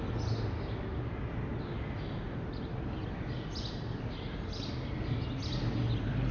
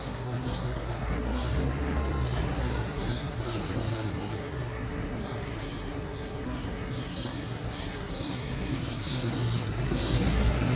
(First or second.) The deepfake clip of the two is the second